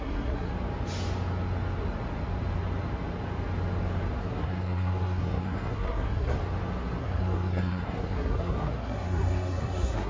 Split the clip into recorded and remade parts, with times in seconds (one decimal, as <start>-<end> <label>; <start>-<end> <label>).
0.0-0.5 remade; 0.5-4.2 recorded; 4.2-6.4 remade; 6.4-7.0 recorded; 7.0-10.1 remade